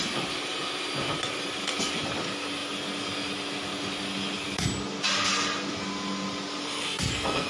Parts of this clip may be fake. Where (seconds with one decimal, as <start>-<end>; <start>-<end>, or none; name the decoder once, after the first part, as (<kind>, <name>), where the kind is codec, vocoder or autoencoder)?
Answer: 6.6-7.5 (codec, SNAC)